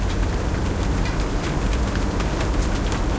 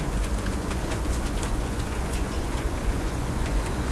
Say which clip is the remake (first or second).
second